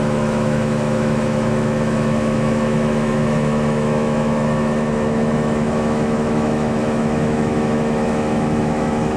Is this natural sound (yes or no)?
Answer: no